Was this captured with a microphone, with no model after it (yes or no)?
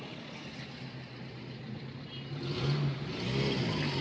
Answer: yes